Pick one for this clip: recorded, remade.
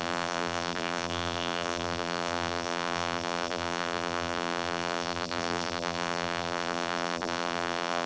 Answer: remade